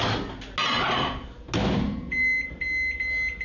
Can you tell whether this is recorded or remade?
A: recorded